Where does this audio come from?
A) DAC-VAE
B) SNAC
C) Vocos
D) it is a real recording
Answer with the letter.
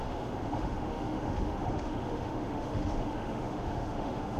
A